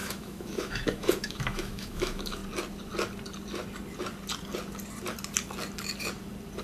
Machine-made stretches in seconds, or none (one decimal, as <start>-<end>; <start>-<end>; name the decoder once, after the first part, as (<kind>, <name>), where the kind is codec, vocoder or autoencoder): 0.0-2.4 (autoencoder, DAC-VAE)